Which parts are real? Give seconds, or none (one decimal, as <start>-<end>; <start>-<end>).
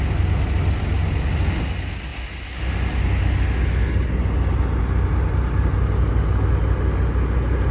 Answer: 0.0-7.7